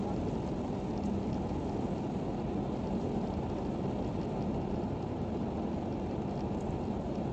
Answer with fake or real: real